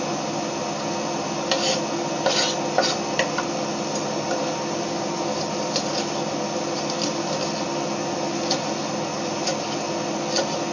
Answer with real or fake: real